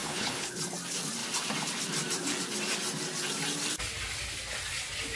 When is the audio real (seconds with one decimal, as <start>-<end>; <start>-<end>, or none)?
0.6-5.2